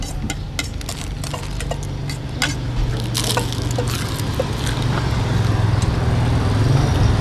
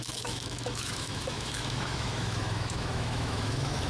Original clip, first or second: first